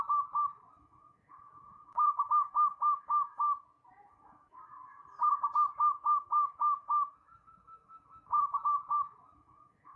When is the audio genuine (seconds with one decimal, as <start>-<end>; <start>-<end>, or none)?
3.5-4.1; 5.0-6.2